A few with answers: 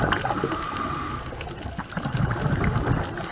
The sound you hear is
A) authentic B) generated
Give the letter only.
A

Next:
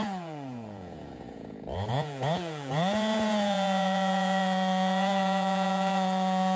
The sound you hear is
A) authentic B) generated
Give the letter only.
B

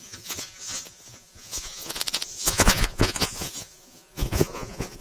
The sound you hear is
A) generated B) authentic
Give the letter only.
A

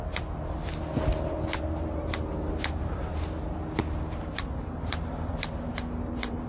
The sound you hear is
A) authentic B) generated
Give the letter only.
A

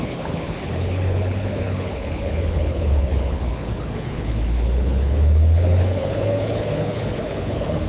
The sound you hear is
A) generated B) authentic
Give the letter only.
A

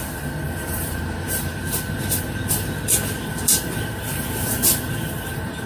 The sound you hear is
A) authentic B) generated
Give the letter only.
B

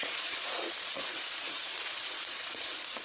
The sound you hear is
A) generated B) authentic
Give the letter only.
A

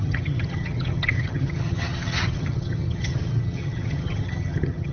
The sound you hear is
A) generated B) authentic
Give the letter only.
A